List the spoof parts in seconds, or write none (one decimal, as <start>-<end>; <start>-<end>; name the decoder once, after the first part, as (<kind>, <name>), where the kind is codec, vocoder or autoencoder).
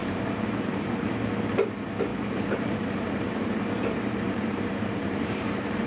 0.0-1.1 (vocoder, BigVGAN v2); 2.1-5.9